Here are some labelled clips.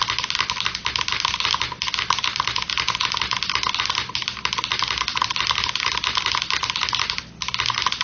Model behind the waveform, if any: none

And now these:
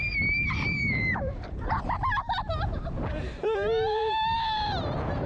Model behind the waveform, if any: vocoder, BigVGAN v2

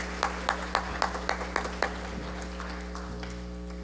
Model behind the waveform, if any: none